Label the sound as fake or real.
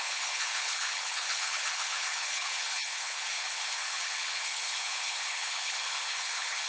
fake